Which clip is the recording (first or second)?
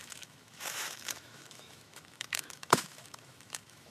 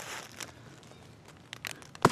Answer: second